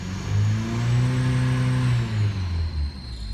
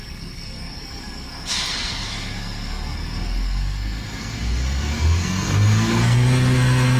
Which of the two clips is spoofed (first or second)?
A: second